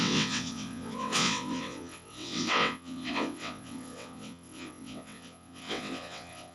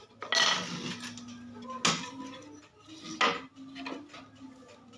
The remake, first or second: first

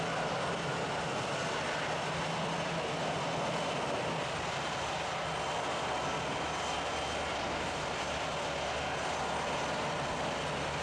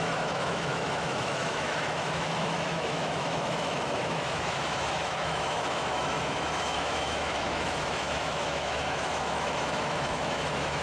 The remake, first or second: second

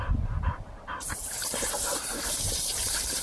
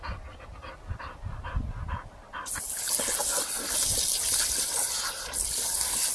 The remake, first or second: first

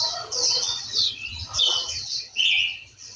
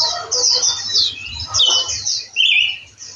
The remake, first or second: first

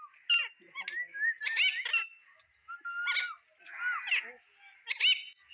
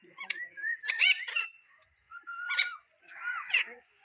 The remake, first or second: second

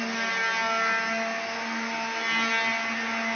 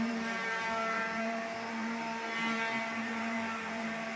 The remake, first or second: second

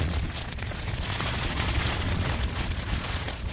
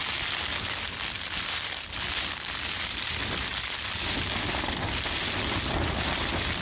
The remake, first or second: first